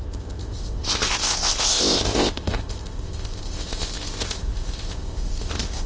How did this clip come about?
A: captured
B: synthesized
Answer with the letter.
B